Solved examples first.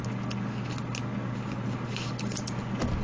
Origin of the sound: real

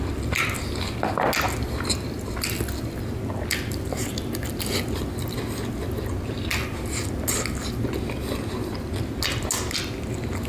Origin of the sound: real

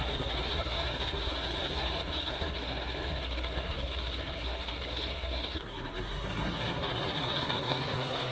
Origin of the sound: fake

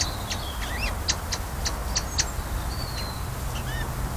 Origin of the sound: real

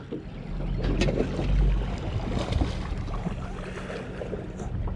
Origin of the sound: real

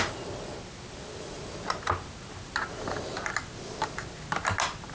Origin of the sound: real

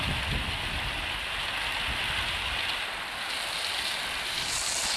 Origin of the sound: real